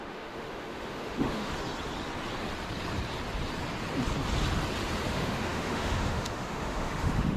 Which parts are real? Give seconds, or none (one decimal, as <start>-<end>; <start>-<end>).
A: 1.5-5.1